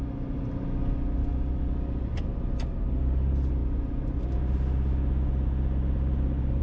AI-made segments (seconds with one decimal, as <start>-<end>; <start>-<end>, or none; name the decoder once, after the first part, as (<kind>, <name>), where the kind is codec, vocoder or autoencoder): none